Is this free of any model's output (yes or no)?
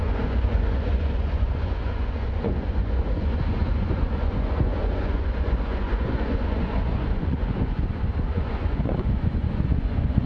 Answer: no